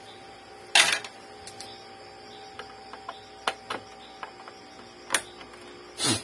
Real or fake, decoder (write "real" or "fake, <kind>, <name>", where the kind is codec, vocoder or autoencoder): real